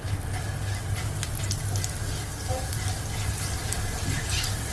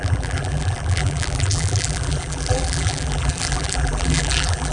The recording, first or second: first